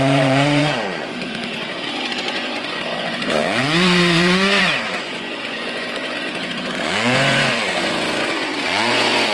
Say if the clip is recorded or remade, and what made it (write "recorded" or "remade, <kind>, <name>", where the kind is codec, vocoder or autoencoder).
remade, vocoder, Vocos